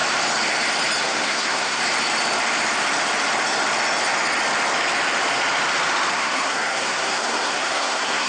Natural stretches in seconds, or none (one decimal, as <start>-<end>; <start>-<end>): 0.0-1.0; 1.8-6.1